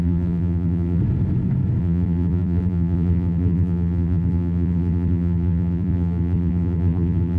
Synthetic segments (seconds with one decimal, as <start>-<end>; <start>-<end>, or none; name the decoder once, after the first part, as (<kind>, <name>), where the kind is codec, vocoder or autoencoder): 0.0-1.0 (vocoder, BigVGAN v2); 1.8-7.4